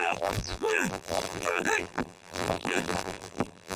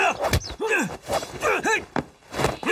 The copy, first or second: first